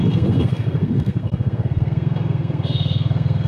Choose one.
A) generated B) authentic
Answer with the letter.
A